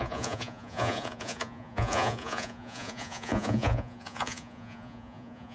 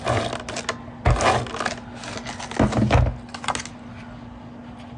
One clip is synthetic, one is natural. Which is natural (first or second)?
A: second